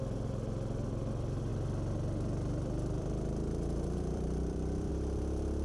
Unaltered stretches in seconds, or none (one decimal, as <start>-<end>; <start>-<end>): 0.0-1.5; 4.9-5.6